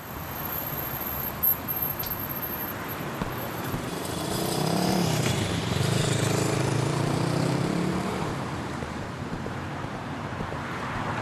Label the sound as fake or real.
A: fake